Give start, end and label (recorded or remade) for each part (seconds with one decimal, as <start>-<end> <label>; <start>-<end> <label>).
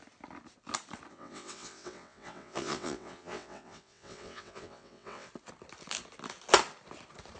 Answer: 0.0-1.1 recorded; 1.1-5.3 remade; 5.3-7.4 recorded